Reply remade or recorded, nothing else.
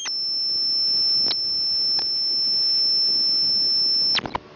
recorded